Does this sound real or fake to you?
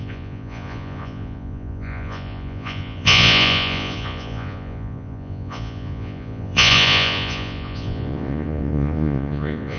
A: fake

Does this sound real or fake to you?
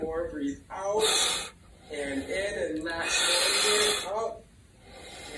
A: real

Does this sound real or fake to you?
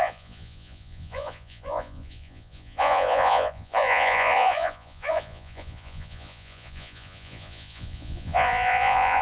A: fake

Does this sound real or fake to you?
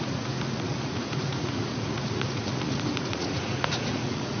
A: fake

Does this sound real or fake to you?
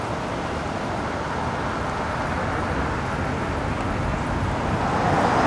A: real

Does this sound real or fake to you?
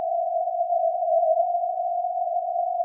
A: fake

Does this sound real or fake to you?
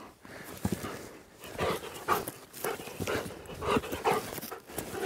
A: real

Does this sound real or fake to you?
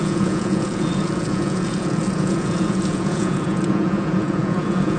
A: fake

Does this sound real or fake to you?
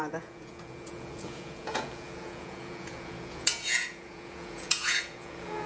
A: fake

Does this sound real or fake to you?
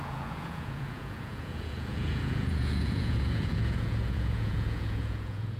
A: fake